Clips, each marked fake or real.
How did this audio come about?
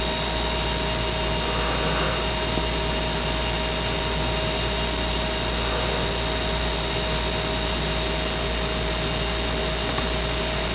real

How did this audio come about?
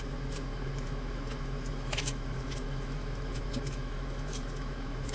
fake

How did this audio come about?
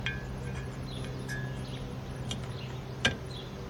real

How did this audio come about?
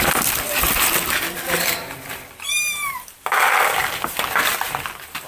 fake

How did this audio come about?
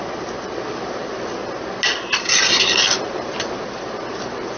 real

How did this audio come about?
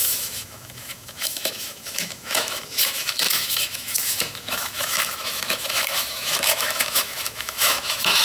fake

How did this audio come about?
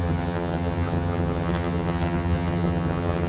fake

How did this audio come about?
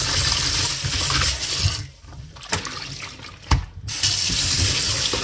real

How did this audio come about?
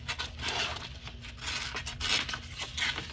real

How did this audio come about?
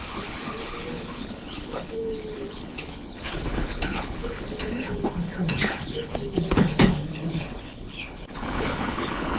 fake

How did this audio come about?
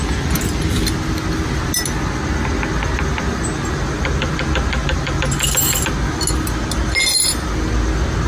real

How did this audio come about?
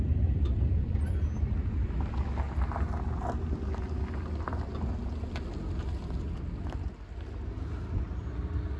real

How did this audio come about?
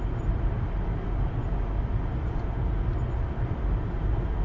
real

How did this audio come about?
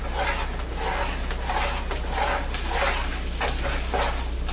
real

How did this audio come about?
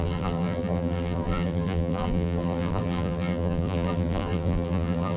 fake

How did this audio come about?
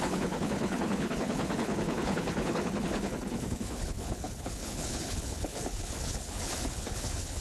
fake